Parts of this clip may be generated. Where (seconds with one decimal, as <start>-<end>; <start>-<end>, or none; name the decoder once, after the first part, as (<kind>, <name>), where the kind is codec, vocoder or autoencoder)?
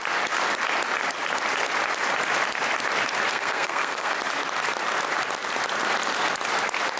3.3-4.1 (codec, SNAC)